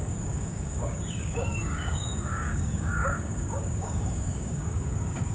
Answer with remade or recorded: remade